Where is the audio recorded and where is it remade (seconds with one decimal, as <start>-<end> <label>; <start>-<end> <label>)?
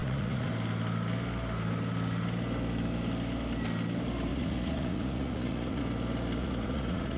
0.0-0.5 remade; 0.5-4.3 recorded; 4.3-5.8 remade; 5.8-6.4 recorded; 6.4-7.2 remade